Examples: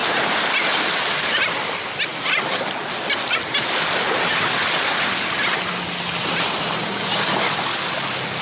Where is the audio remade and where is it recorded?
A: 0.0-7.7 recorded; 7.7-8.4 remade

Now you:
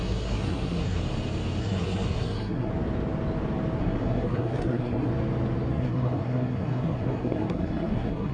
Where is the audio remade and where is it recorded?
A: 0.0-1.0 remade; 1.0-1.6 recorded; 1.6-2.7 remade; 2.7-3.8 recorded; 3.8-5.1 remade; 5.1-5.7 recorded; 5.7-8.3 remade

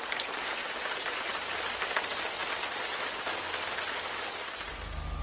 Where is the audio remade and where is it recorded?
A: 0.0-5.2 recorded